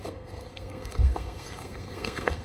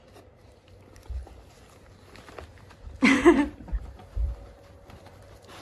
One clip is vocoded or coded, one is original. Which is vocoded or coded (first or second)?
first